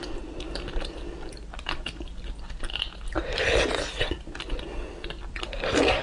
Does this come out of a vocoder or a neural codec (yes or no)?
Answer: no